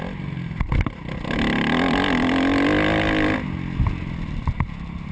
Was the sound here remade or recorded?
recorded